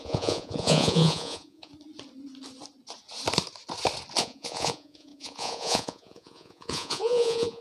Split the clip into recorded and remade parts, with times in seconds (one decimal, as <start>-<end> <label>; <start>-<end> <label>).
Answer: 0.0-1.7 remade; 1.7-4.2 recorded; 4.2-7.6 remade